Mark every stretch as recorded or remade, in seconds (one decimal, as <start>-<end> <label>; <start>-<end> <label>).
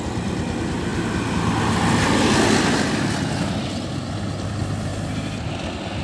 0.0-6.0 recorded